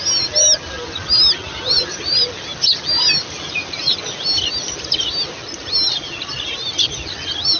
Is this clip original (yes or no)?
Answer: yes